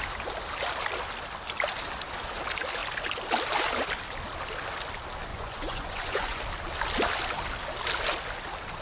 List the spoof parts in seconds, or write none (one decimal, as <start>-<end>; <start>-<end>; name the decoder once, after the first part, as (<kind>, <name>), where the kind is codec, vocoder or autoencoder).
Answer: 5.3-6.4 (vocoder, Vocos)